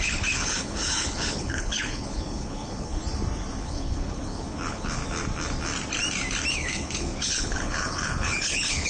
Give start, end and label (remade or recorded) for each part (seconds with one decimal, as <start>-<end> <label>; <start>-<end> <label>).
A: 0.0-3.0 remade; 3.0-3.6 recorded; 3.6-5.0 remade; 5.0-6.5 recorded; 6.5-8.9 remade